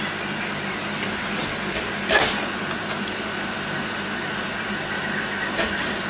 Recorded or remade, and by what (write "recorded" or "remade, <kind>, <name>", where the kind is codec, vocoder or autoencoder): recorded